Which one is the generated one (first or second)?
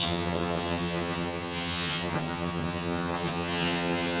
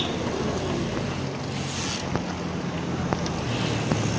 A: first